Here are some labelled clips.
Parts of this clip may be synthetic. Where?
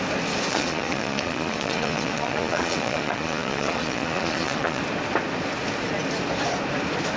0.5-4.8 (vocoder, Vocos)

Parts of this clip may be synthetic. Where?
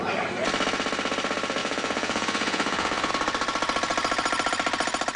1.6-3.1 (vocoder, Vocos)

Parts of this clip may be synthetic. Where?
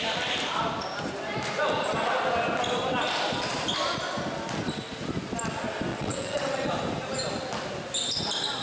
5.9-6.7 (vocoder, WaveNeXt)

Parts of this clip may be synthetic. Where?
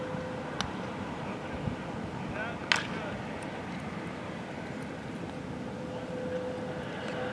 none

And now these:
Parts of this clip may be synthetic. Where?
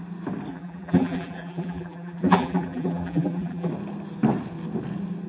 0.5-3.7 (vocoder, BigVGAN v2)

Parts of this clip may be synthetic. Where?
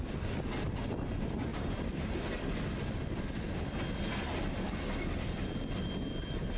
none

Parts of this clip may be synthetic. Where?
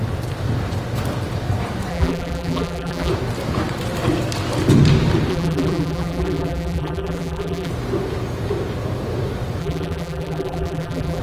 1.9-3.1 (vocoder, BigVGAN v2); 5.3-7.7; 9.6-11.2